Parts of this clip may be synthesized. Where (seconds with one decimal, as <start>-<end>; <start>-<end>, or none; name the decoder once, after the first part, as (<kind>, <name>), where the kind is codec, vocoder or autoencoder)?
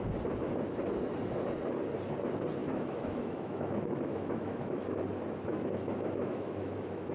2.6-5.0 (autoencoder, DAC-VAE); 5.5-7.1